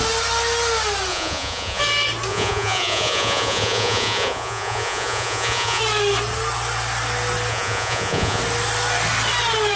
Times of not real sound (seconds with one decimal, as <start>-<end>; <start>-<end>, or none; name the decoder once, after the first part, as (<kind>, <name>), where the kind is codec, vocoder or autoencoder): 1.1-1.8 (vocoder, Vocos); 2.3-5.8; 7.5-8.4